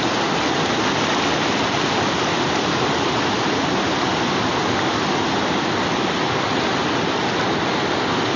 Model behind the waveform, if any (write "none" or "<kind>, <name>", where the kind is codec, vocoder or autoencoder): none